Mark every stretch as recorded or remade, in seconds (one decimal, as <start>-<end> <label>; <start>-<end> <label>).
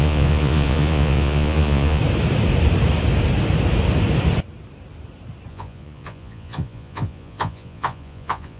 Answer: 0.0-2.0 remade; 2.0-5.5 recorded; 5.5-8.6 remade